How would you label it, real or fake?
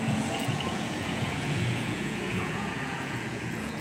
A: fake